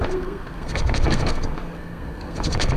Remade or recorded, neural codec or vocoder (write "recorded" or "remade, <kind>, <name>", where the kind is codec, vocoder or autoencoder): remade, codec, SNAC